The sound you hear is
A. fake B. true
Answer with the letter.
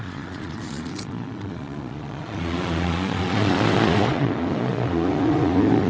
A